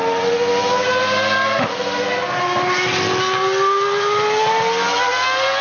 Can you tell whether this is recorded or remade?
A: recorded